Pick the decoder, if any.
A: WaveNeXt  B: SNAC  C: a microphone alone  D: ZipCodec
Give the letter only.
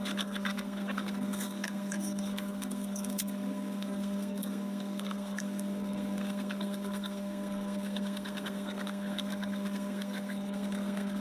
B